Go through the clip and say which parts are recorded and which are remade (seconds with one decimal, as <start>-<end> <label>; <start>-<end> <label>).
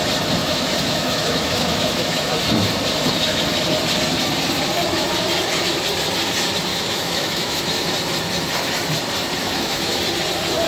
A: 0.0-0.4 recorded; 0.4-2.3 remade; 2.3-6.7 recorded; 6.7-7.6 remade; 7.6-9.4 recorded; 9.4-10.0 remade; 10.0-10.7 recorded